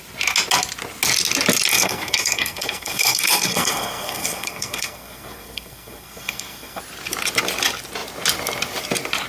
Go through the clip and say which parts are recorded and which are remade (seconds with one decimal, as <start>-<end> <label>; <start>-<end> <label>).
0.0-1.7 recorded; 1.7-6.8 remade; 6.8-9.3 recorded